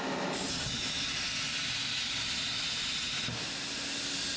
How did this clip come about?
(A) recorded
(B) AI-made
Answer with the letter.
A